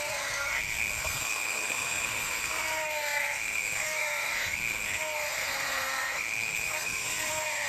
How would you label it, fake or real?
fake